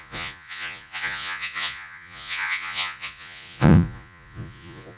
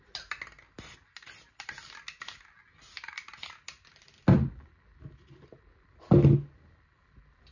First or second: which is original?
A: second